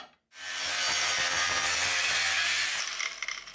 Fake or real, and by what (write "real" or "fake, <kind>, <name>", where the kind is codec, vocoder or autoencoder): fake, vocoder, BigVGAN v2